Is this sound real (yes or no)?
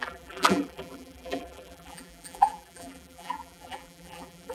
no